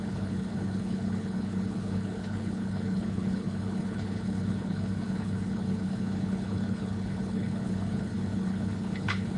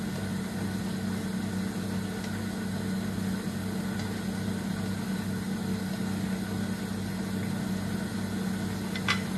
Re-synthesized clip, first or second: first